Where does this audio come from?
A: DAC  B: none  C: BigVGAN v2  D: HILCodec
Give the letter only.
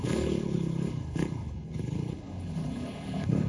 D